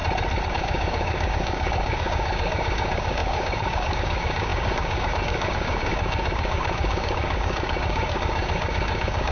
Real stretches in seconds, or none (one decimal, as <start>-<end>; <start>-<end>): 0.0-0.5